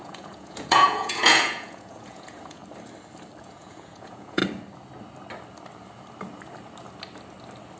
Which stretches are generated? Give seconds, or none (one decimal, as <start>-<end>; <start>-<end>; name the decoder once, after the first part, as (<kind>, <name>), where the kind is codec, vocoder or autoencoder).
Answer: 0.0-2.6 (vocoder, Vocos); 3.4-4.4